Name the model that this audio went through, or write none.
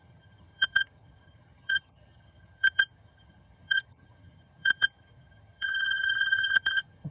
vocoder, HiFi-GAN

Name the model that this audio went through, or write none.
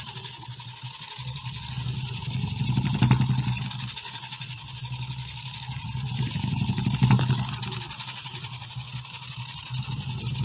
none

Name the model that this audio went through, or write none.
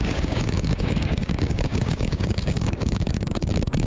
codec, DAC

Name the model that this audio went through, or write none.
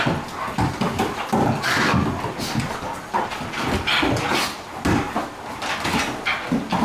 none